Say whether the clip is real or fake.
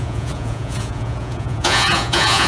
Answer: fake